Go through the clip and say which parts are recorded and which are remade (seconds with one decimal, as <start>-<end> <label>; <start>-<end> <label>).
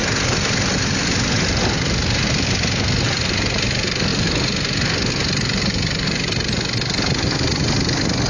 0.0-8.3 recorded